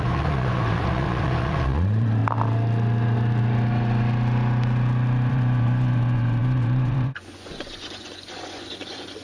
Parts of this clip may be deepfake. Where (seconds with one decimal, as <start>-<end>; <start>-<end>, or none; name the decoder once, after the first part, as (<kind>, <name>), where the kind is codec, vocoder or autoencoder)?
0.0-2.2 (vocoder, Vocos); 5.3-9.2